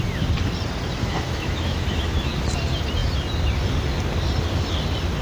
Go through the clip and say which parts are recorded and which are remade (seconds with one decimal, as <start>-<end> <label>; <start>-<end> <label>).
0.0-1.0 recorded; 1.0-2.3 remade; 2.3-5.2 recorded